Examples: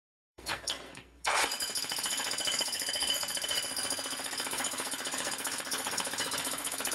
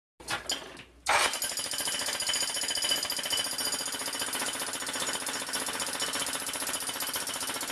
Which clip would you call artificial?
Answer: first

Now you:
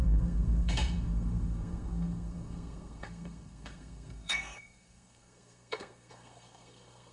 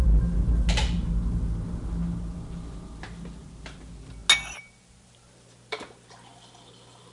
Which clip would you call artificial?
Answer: first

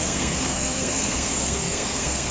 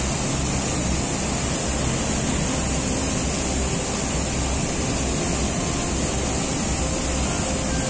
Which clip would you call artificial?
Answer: first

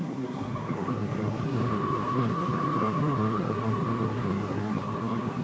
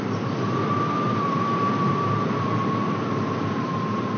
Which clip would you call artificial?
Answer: first